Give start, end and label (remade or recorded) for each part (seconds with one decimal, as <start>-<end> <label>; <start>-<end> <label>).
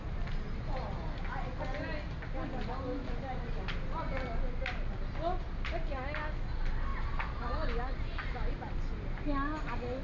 0.0-10.0 recorded